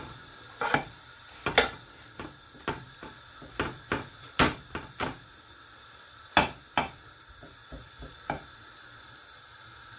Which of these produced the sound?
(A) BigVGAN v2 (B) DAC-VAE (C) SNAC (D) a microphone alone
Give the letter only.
A